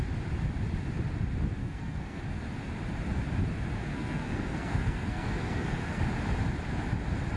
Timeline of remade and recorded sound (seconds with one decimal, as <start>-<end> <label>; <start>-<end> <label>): 0.0-1.6 recorded; 1.6-2.2 remade; 2.2-3.9 recorded; 3.9-6.0 remade; 6.0-7.4 recorded